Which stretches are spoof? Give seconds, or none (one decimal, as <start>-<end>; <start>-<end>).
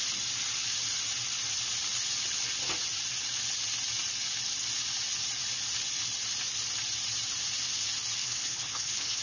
8.2-9.2